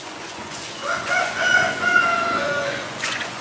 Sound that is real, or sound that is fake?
fake